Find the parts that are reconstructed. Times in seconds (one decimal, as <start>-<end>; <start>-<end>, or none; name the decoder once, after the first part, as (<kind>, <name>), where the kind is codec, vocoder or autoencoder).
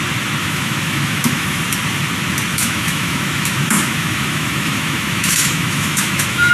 0.4-1.6 (autoencoder, DAC-VAE); 2.5-6.5